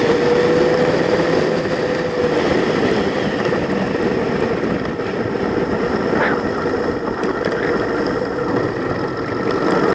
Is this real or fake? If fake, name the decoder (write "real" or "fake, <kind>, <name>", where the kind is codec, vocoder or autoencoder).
real